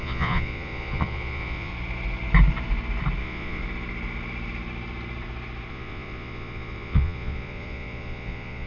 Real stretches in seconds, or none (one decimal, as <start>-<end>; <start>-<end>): 1.7-3.2; 3.6-5.7